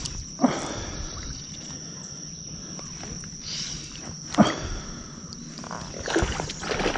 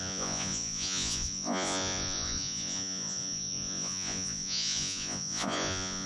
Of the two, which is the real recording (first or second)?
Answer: first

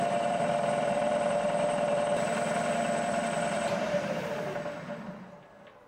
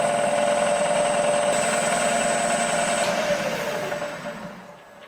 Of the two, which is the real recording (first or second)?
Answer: second